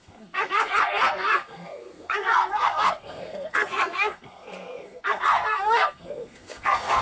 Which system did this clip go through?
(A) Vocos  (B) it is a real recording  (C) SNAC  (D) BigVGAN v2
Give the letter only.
C